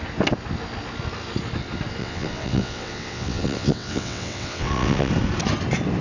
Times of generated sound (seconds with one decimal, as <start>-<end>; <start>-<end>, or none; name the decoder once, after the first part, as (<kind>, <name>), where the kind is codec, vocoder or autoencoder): 2.0-5.1 (vocoder, WaveNeXt)